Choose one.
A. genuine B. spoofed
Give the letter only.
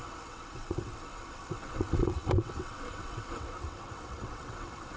B